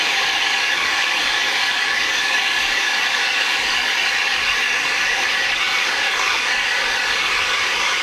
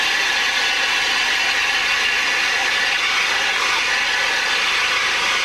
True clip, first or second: second